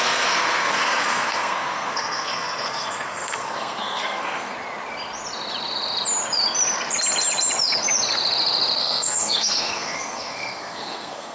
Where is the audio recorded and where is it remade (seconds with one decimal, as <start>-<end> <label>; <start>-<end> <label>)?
0.0-4.5 remade; 4.5-8.8 recorded; 8.8-11.3 remade